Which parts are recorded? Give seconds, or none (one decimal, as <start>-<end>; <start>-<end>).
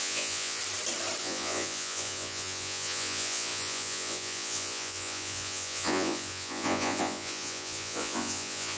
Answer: 0.6-1.2